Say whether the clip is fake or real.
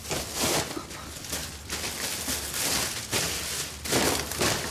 real